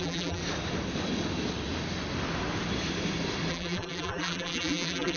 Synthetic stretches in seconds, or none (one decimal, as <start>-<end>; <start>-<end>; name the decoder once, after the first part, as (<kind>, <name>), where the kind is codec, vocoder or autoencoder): 0.0-0.4 (vocoder, BigVGAN v2); 3.5-5.2